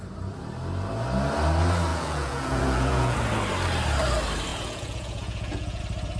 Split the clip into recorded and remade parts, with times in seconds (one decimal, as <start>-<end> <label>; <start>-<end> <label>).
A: 0.0-1.9 recorded; 1.9-3.2 remade; 3.2-4.5 recorded; 4.5-5.8 remade; 5.8-6.2 recorded